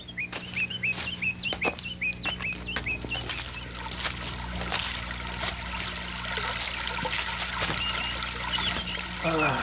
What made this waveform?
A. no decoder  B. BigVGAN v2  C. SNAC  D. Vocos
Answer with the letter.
A